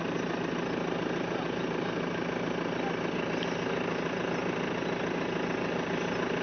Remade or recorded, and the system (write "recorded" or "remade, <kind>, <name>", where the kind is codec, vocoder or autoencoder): recorded